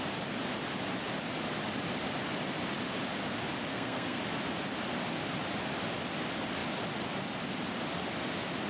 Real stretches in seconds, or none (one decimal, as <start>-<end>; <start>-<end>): 0.0-3.7; 4.2-8.7